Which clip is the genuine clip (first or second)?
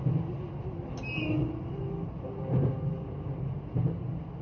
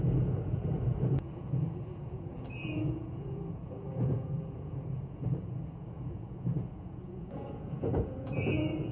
first